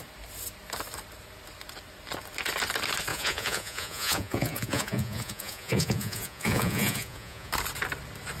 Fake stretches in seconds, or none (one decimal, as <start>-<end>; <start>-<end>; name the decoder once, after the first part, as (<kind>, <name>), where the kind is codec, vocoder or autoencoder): 3.1-7.5 (vocoder, Vocos)